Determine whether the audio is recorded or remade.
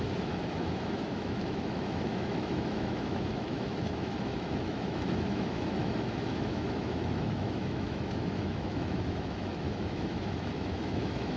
remade